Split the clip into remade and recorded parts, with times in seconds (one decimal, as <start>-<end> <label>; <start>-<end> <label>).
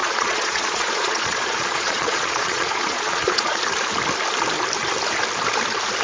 0.0-3.6 remade; 3.6-6.0 recorded